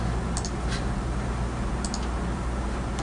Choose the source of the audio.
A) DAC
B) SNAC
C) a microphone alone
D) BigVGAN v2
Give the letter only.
C